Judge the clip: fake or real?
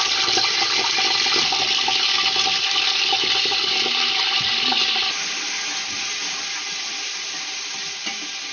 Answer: real